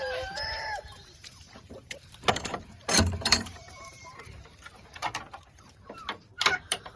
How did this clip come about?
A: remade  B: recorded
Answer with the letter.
A